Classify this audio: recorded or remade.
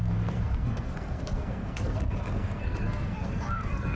remade